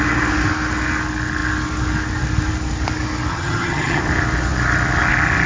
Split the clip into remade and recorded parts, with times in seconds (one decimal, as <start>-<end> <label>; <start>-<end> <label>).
0.0-3.3 recorded; 3.3-4.0 remade; 4.0-5.5 recorded